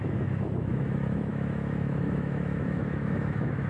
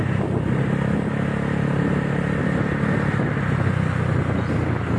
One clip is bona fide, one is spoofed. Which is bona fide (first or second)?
second